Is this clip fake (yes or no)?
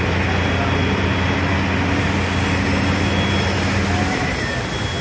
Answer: no